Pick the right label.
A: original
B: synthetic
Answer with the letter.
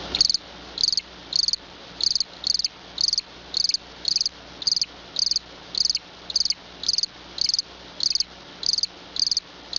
A